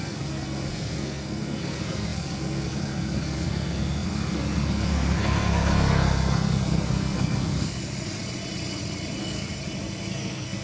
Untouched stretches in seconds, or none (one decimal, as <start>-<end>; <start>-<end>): 7.8-9.2; 9.6-10.1